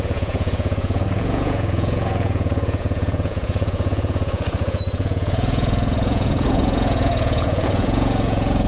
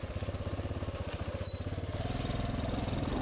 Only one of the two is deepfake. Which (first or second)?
first